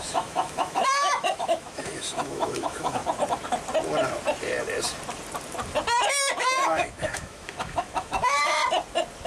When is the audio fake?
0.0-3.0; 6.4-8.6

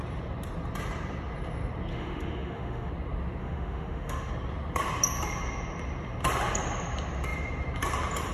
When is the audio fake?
1.9-2.9; 3.4-4.3